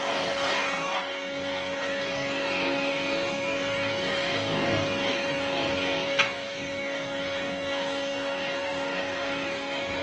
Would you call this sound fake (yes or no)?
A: yes